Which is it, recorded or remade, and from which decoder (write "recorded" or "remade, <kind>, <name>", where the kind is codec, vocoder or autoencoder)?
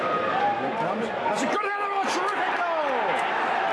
recorded